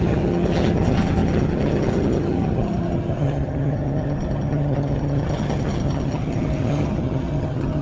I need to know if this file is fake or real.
fake